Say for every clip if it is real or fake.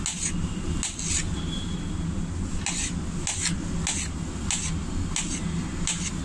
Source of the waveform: real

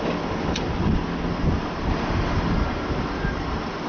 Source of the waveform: real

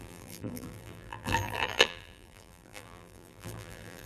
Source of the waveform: fake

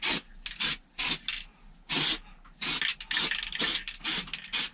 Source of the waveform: real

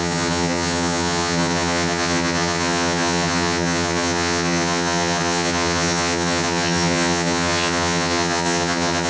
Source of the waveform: fake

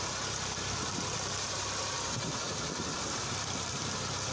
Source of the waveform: fake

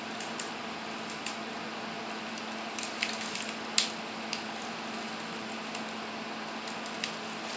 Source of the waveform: real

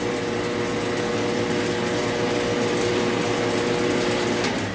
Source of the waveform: real